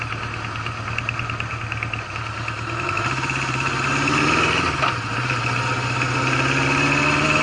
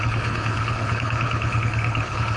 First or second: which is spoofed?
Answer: second